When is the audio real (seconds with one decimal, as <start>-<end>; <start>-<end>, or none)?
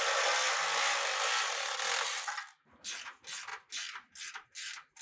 0.0-5.0